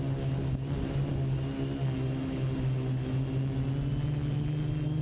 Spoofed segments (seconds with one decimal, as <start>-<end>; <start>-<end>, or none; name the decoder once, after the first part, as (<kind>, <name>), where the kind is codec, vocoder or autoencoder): none